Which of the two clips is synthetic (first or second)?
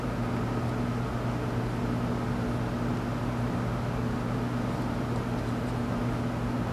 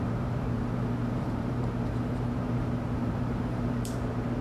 second